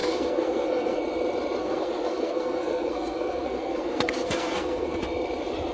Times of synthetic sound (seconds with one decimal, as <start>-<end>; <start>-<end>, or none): 0.0-1.0; 1.6-5.0